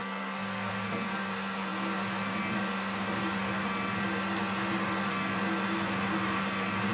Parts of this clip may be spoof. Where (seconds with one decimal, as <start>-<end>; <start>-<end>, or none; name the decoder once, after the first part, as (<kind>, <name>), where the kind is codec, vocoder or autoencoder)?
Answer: 0.0-0.7 (codec, SNAC)